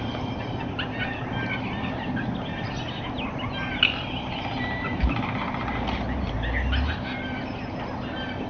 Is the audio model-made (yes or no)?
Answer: no